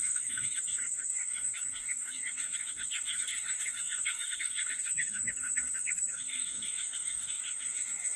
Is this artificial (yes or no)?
yes